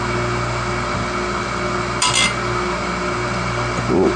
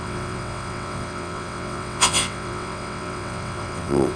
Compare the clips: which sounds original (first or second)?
first